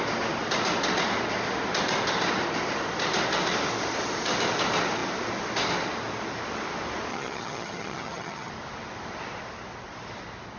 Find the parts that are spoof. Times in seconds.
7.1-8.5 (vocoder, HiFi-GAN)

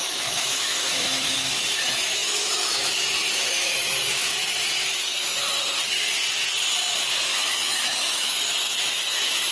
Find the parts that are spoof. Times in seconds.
0.0-5.6 (autoencoder, DAC-VAE); 7.1-9.5

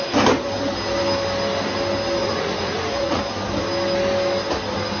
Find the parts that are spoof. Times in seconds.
2.2-3.2 (vocoder, Vocos)

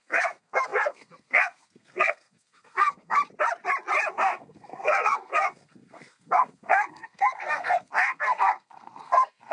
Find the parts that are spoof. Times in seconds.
0.0-3.2 (codec, SNAC); 4.1-9.5

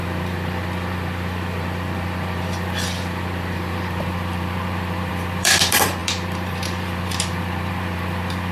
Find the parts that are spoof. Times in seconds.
0.0-8.5 (vocoder, BigVGAN v2)

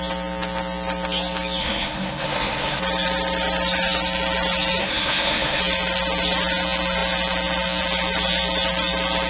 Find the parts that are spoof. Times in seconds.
1.6-2.8 (codec, SNAC); 4.8-5.6